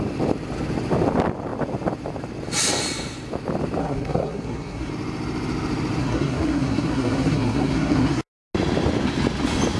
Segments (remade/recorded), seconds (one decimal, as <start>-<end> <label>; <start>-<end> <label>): 0.0-3.8 recorded; 3.8-4.9 remade; 4.9-6.0 recorded; 6.0-8.2 remade; 8.2-9.8 recorded